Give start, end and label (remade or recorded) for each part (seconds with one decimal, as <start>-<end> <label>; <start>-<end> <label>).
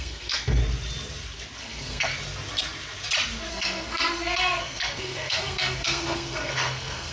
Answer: 0.0-0.6 remade; 0.6-1.6 recorded; 1.6-2.1 remade; 2.1-3.5 recorded; 3.5-7.1 remade